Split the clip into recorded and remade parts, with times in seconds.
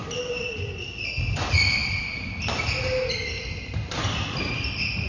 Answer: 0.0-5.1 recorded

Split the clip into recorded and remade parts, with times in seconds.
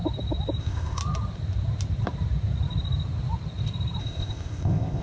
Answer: 0.0-0.6 recorded; 0.6-1.0 remade; 1.0-4.0 recorded; 4.0-5.0 remade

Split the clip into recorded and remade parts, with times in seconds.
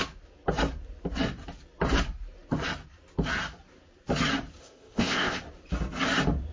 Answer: 0.0-4.6 recorded; 4.6-5.4 remade; 5.4-6.5 recorded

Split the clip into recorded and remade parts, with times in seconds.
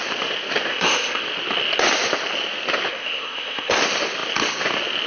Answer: 0.0-0.7 recorded; 0.7-1.2 remade; 1.2-2.9 recorded; 2.9-3.8 remade; 3.8-5.1 recorded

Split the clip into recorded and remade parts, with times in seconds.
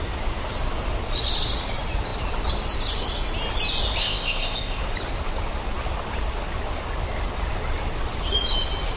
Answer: 0.0-4.0 recorded; 4.0-4.8 remade; 4.8-9.0 recorded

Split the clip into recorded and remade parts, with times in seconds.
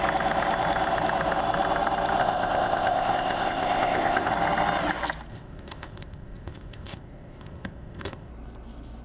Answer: 0.0-2.2 recorded; 2.2-4.3 remade; 4.3-5.3 recorded; 5.3-8.3 remade; 8.3-9.0 recorded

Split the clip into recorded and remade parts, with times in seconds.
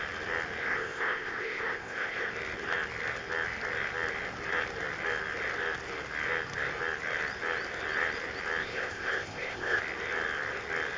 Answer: 0.0-0.6 recorded; 0.6-2.3 remade; 2.3-8.6 recorded; 8.6-9.8 remade; 9.8-11.0 recorded